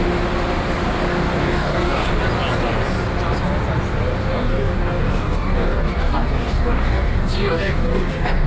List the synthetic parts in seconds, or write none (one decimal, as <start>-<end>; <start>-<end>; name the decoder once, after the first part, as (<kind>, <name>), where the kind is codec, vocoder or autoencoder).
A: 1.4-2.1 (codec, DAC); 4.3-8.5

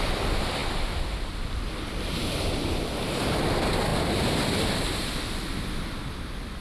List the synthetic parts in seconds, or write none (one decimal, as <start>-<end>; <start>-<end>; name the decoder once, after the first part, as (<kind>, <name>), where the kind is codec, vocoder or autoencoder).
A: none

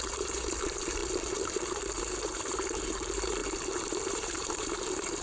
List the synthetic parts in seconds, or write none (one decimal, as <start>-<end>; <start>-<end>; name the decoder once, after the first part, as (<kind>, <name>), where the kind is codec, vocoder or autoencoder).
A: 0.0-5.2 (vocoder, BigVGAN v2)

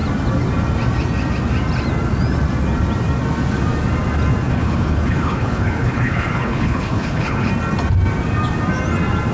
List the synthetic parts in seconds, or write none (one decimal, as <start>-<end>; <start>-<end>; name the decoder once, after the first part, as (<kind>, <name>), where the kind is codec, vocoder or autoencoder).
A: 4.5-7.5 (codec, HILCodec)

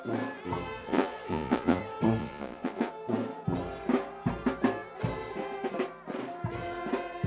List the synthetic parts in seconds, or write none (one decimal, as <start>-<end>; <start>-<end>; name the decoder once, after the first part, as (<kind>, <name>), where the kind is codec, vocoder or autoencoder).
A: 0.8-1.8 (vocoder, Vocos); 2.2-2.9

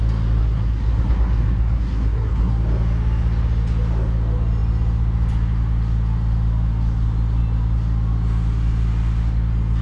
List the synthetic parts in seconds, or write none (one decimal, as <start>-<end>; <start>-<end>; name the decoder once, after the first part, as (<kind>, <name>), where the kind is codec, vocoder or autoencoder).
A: 0.4-2.5 (codec, SNAC)